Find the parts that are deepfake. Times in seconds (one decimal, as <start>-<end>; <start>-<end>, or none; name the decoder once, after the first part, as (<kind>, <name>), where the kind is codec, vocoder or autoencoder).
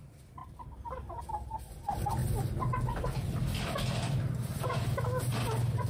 0.0-0.4 (vocoder, BigVGAN v2); 1.2-2.2; 3.0-4.5